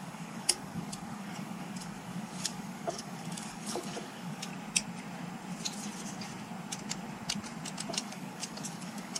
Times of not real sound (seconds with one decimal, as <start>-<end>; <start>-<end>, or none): 0.0-4.5; 7.9-9.2